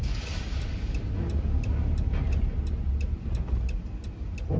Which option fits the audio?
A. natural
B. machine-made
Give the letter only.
A